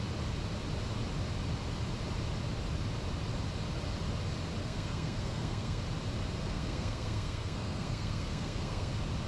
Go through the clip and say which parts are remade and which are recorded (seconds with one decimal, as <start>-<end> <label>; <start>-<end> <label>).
0.0-4.6 recorded; 4.6-5.8 remade; 5.8-6.4 recorded; 6.4-8.9 remade; 8.9-9.3 recorded